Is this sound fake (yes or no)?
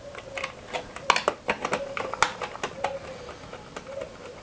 no